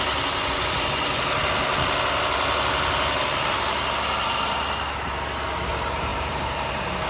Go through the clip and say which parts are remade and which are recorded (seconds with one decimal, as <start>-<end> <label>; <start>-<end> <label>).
0.0-0.4 recorded; 0.4-1.2 remade; 1.2-7.1 recorded